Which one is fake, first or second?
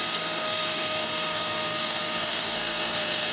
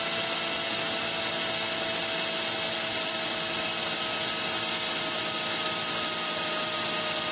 first